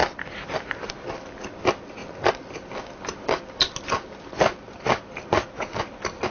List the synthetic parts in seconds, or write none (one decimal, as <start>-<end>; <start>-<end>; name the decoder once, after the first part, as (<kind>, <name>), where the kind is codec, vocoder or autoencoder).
none